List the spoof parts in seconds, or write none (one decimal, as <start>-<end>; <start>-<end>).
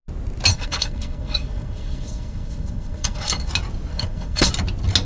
0.5-3.5; 3.9-4.5